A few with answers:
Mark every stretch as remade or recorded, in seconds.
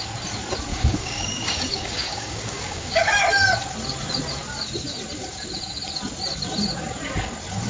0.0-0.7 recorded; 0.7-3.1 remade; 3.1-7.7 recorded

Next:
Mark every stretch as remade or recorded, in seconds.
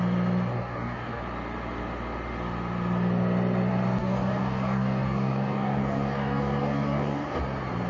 0.0-0.5 recorded; 0.5-1.2 remade; 1.2-4.0 recorded; 4.0-7.4 remade; 7.4-7.9 recorded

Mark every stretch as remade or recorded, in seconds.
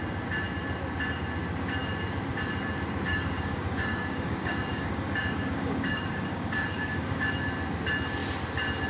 0.0-3.1 recorded; 3.1-7.3 remade; 7.3-8.9 recorded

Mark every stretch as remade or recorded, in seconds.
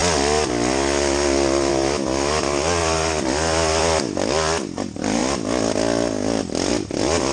0.0-7.3 recorded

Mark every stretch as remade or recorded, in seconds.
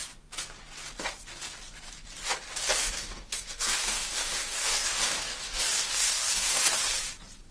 0.0-2.8 recorded; 2.8-6.6 remade; 6.6-7.5 recorded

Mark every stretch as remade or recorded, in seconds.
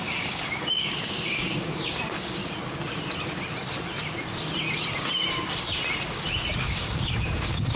0.0-2.4 remade; 2.4-6.6 recorded; 6.6-7.8 remade